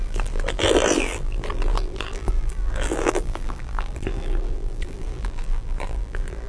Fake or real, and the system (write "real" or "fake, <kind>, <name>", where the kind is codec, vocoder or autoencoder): fake, vocoder, BigVGAN v2